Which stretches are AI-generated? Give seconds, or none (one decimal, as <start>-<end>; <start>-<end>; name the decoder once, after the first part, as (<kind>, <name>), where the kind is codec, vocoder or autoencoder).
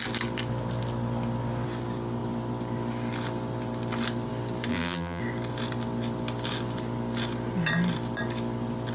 4.7-5.2 (vocoder, BigVGAN v2)